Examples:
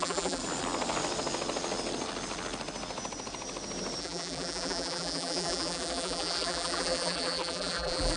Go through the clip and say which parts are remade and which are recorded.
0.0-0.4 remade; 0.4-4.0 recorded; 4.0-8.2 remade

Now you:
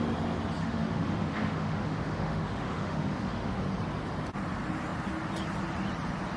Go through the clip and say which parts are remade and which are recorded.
0.0-0.6 recorded; 0.6-3.6 remade; 3.6-6.4 recorded

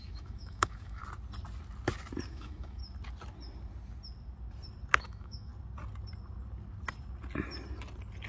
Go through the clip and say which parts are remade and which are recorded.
0.0-1.0 remade; 1.0-2.3 recorded; 2.3-2.8 remade; 2.8-5.0 recorded; 5.0-5.5 remade; 5.5-8.3 recorded

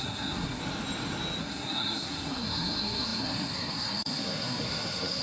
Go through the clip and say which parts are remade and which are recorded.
0.0-0.6 remade; 0.6-1.4 recorded; 1.4-5.2 remade

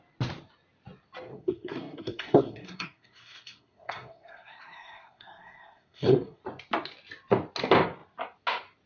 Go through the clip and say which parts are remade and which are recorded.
0.0-1.3 recorded; 1.3-6.4 remade; 6.4-8.9 recorded

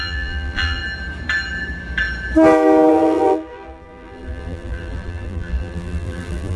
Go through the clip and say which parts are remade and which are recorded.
0.0-0.8 remade; 0.8-2.9 recorded; 2.9-6.6 remade

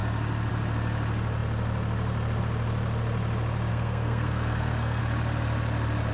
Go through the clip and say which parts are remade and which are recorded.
0.0-3.7 recorded; 3.7-5.0 remade; 5.0-6.1 recorded

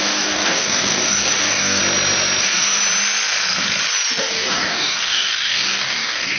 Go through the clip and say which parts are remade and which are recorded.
0.0-1.8 remade; 1.8-2.4 recorded; 2.4-2.8 remade; 2.8-4.2 recorded; 4.2-6.4 remade